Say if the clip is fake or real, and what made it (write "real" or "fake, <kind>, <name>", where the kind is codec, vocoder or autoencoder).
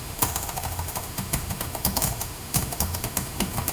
fake, autoencoder, DAC-VAE